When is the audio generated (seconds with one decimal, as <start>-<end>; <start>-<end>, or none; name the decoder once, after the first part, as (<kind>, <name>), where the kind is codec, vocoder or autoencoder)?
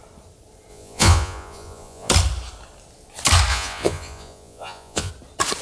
0.7-2.1 (vocoder, Vocos); 3.5-5.1